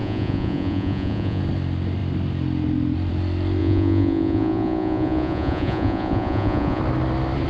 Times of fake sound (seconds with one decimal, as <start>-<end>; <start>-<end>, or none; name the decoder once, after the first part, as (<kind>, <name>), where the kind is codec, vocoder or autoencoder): 0.0-1.4 (vocoder, Vocos); 3.6-6.8